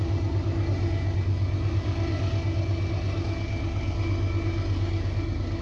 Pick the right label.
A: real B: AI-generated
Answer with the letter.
A